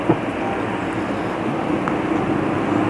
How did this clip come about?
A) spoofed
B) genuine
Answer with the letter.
B